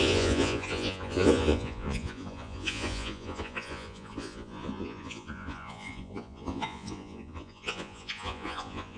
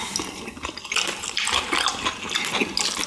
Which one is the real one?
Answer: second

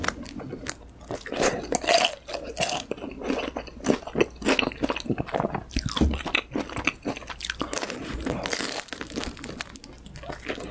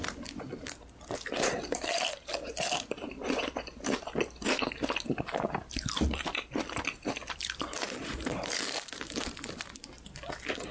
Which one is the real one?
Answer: first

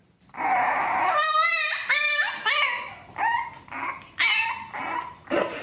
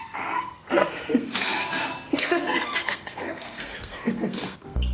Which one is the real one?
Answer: first